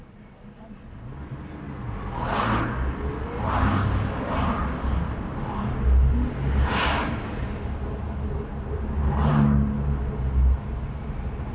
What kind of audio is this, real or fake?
real